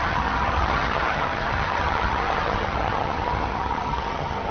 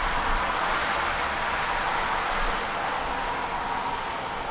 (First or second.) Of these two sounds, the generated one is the first